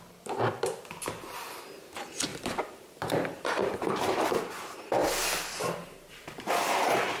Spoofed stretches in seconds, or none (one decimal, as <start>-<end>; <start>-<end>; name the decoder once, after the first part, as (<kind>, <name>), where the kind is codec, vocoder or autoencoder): 2.3-4.5 (vocoder, BigVGAN v2)